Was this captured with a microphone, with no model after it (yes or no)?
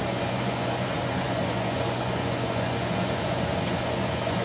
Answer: no